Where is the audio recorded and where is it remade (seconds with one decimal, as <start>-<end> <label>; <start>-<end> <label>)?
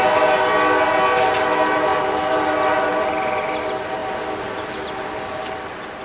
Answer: 0.0-6.0 recorded